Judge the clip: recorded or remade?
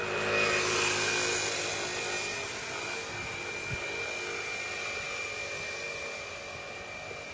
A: recorded